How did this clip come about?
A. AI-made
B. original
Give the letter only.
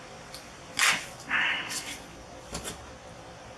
B